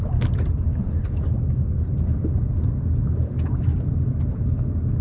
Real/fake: real